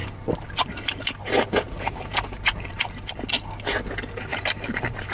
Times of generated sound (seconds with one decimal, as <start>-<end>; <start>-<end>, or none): 0.0-3.1; 4.3-5.1

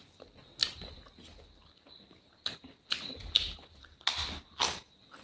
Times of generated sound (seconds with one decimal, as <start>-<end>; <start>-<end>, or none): none